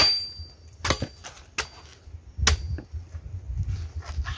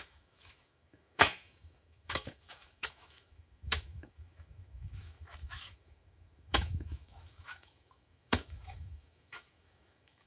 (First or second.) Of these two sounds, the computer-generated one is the second